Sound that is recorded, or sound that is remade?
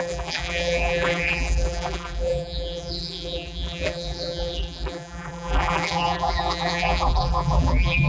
remade